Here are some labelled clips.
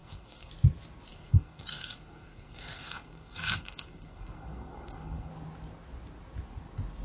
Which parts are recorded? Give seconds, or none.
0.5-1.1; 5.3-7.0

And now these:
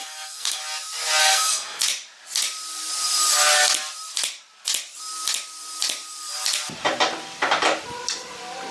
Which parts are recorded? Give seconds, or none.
0.6-1.2; 1.8-8.7

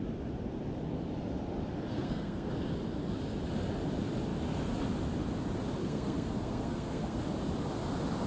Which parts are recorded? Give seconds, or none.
0.0-1.9; 2.5-5.8; 7.2-8.3

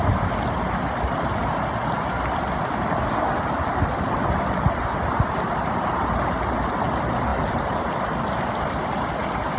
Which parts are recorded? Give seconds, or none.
0.0-9.6